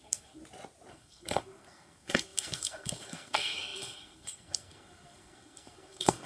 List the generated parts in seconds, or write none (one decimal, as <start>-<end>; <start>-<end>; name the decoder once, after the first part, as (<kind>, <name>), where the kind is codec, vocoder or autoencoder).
0.0-0.4 (codec, SNAC); 0.9-6.3